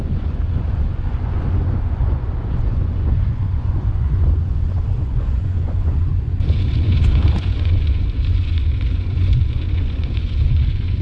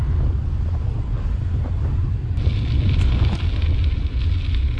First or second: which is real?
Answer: second